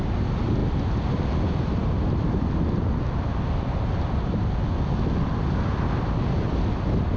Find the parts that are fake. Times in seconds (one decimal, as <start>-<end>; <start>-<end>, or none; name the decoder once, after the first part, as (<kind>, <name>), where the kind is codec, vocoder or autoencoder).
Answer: none